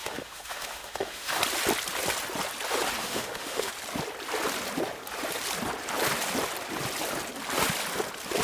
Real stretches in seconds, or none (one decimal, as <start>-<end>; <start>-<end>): 1.4-3.0; 3.7-8.4